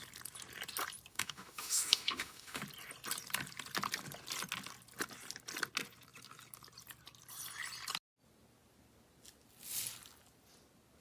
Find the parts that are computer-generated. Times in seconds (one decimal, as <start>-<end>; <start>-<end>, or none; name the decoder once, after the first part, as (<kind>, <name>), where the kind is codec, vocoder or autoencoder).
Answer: 1.1-2.6 (autoencoder, DAC-VAE)